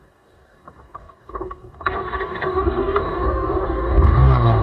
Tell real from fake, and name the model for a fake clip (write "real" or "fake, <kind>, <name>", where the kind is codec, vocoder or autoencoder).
fake, codec, DAC